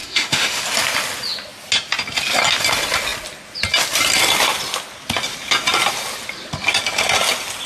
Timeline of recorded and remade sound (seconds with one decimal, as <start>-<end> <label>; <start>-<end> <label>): 0.0-0.6 remade; 0.6-7.7 recorded